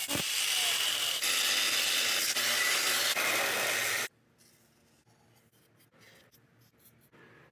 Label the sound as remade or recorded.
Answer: recorded